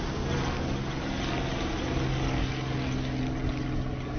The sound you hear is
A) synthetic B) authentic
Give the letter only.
B